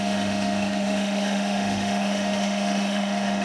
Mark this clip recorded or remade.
remade